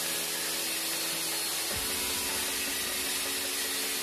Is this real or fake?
real